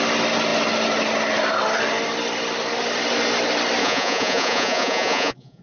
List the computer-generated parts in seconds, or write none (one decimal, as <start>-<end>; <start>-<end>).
3.8-5.6